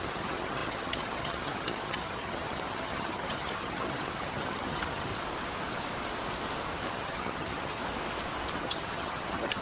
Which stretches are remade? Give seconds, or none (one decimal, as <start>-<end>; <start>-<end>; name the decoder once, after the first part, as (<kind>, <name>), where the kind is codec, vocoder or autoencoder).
0.0-5.1 (vocoder, HiFi-GAN); 6.9-7.8; 8.6-9.6